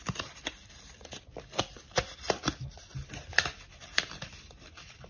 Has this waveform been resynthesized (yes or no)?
no